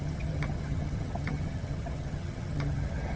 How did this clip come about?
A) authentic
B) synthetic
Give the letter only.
B